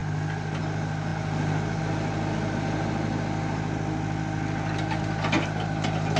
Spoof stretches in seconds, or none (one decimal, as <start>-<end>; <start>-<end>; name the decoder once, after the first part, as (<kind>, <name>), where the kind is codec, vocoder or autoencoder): none